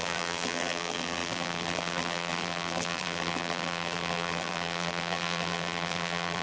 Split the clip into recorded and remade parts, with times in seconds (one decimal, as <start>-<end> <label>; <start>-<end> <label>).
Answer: 0.0-6.4 remade